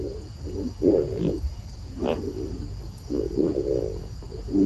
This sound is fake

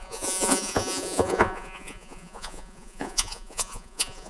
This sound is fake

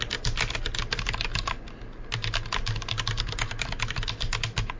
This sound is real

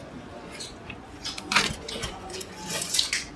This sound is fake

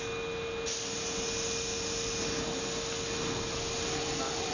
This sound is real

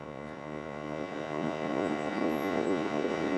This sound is fake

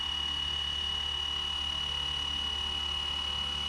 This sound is real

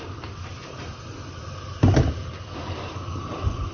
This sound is real